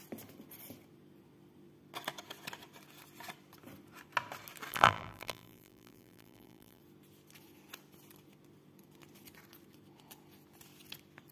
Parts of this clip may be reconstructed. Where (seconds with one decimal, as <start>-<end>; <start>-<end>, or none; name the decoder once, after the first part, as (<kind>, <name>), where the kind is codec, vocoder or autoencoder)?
4.7-6.8 (vocoder, BigVGAN v2)